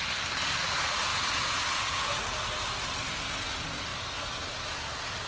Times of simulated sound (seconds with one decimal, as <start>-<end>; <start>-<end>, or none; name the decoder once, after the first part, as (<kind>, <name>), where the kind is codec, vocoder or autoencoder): 1.1-2.2 (vocoder, Vocos)